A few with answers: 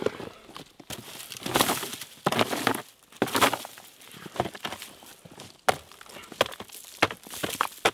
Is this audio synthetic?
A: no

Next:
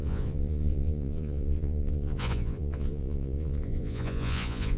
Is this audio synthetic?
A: yes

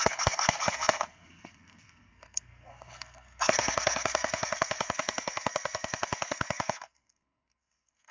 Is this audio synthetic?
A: yes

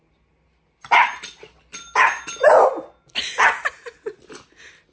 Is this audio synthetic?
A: no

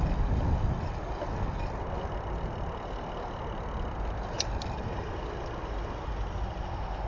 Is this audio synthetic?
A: no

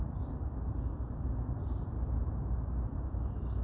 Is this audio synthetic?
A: no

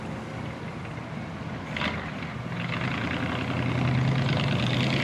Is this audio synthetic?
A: no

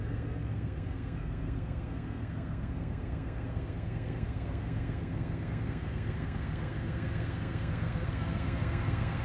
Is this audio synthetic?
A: yes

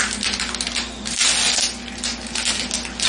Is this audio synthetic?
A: no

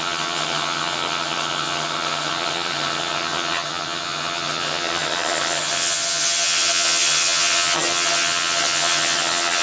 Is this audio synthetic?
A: yes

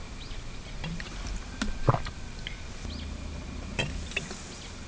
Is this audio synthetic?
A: no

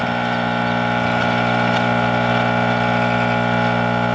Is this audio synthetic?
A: no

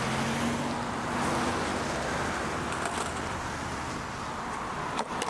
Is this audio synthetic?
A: no